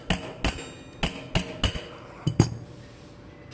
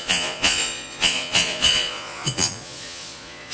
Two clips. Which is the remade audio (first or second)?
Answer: second